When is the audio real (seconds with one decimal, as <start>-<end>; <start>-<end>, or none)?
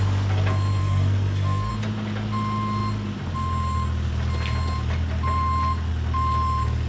0.0-0.8; 1.7-6.9